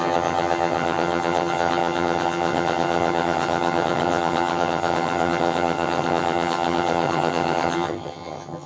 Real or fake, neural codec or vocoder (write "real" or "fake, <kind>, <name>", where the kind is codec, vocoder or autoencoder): fake, vocoder, HiFi-GAN